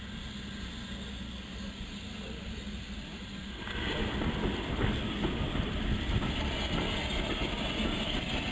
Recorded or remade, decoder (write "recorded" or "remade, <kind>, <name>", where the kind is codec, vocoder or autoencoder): recorded